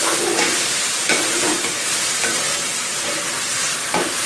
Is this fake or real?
real